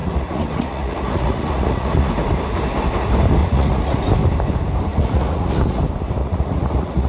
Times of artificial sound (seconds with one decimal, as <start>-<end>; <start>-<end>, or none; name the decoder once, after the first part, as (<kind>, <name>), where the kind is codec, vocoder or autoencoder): 0.0-2.1 (vocoder, Vocos); 3.4-4.0; 4.9-5.8; 6.2-7.1